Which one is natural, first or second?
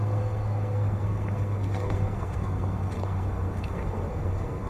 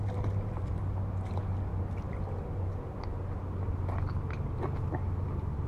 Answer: second